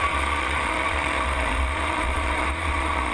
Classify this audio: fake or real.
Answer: fake